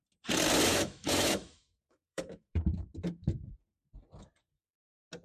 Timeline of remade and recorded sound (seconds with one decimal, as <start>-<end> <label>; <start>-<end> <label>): 0.0-0.7 recorded; 0.7-3.5 remade; 3.5-5.2 recorded